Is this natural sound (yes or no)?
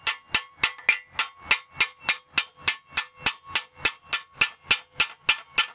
yes